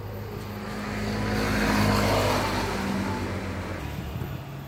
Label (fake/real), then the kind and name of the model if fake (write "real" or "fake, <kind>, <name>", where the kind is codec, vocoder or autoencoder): real